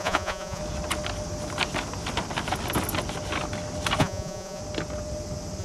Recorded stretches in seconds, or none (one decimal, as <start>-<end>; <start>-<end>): 0.6-4.0; 4.6-5.6